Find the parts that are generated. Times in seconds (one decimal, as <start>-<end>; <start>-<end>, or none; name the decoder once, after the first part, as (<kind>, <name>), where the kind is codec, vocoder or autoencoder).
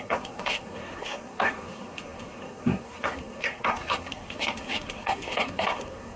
0.0-6.2 (codec, SNAC)